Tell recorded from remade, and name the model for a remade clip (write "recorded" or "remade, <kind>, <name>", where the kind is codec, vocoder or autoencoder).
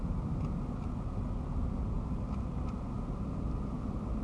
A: recorded